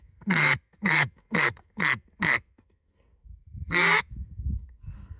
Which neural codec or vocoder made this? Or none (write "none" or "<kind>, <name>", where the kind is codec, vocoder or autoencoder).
codec, SNAC